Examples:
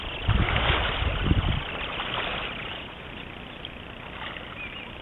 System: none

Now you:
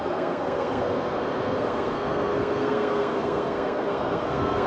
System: codec, SNAC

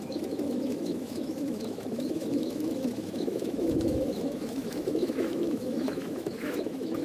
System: autoencoder, DAC-VAE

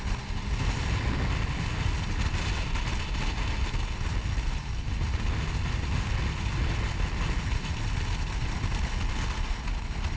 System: none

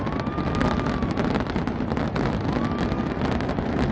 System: none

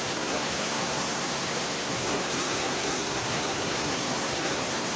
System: codec, SNAC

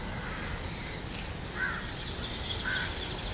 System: none